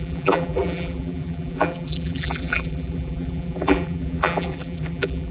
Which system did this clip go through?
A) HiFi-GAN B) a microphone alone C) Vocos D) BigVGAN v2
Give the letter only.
D